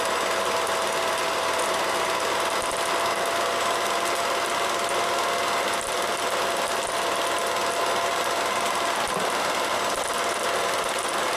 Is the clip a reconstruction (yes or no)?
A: no